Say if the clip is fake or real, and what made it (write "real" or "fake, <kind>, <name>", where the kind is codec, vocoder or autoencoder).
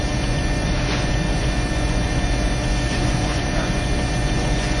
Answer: fake, vocoder, Vocos